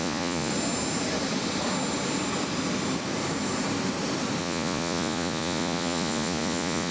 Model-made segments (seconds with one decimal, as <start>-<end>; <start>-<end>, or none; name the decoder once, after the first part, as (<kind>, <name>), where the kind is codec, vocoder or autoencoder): 0.0-0.5 (vocoder, Vocos); 4.4-6.9